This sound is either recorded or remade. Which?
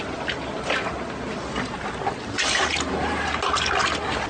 recorded